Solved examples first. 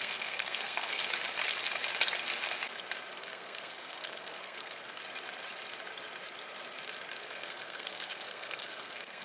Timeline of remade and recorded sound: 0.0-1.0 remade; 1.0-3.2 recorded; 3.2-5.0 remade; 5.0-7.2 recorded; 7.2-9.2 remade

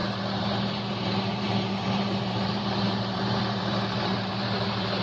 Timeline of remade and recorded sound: 0.0-5.0 remade

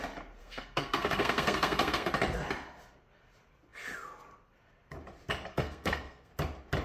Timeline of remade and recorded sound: 0.0-0.4 recorded; 0.4-2.1 remade; 2.1-5.5 recorded; 5.5-6.3 remade; 6.3-6.8 recorded

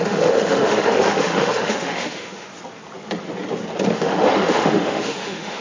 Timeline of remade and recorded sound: 0.0-2.5 remade; 2.5-3.9 recorded; 3.9-5.6 remade